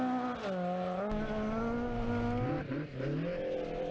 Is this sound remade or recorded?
recorded